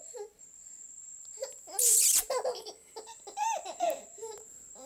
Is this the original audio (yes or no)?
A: no